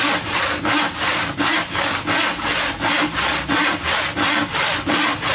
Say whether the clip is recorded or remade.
recorded